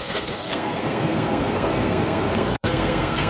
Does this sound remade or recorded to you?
remade